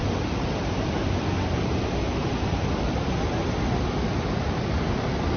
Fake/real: fake